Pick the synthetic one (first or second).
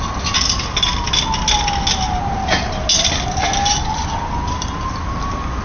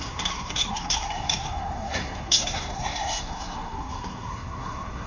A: second